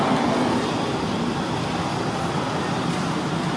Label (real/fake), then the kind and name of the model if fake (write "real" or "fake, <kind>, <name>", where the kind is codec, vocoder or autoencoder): real